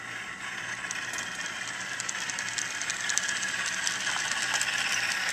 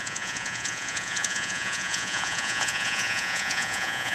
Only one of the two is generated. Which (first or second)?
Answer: second